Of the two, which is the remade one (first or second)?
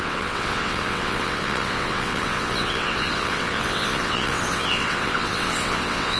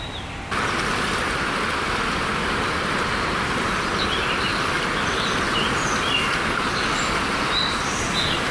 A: first